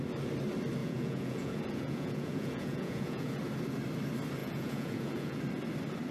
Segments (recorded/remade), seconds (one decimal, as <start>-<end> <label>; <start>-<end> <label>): 0.0-0.8 recorded; 0.8-3.3 remade; 3.3-4.4 recorded; 4.4-5.4 remade; 5.4-6.1 recorded